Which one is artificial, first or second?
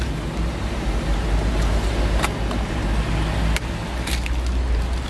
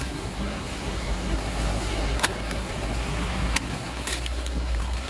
second